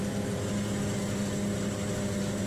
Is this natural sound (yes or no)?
yes